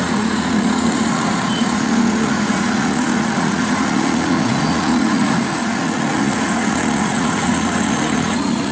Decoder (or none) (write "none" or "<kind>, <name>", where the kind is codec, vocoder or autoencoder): vocoder, Vocos